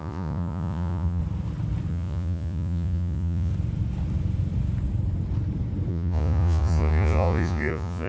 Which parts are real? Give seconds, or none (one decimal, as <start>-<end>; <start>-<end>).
1.2-1.9; 3.5-5.9